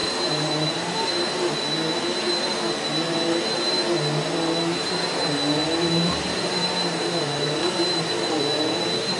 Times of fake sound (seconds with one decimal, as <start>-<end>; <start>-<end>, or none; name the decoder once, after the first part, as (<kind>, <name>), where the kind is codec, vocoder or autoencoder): 0.0-1.6 (vocoder, BigVGAN v2); 5.6-8.4